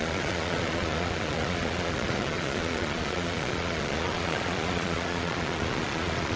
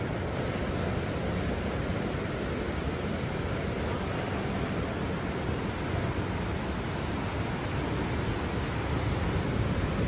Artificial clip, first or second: first